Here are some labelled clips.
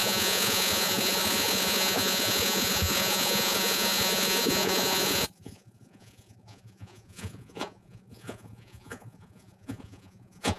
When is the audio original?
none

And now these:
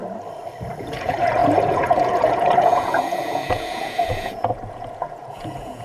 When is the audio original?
0.0-0.8

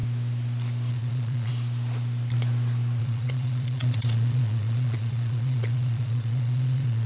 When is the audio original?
0.0-0.9; 1.5-3.0

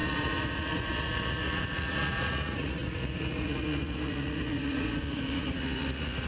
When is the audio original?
none